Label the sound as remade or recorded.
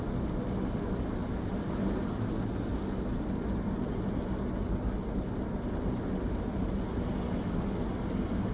recorded